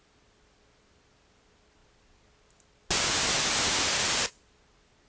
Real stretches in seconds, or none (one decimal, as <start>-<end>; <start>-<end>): 0.0-5.1